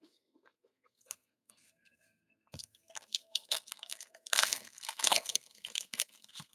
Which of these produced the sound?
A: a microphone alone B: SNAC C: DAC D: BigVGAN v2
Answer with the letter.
B